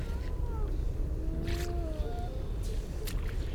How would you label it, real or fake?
real